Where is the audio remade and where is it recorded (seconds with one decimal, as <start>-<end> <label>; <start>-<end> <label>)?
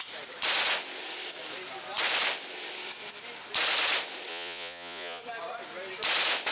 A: 0.0-4.3 recorded; 4.3-5.2 remade; 5.2-6.5 recorded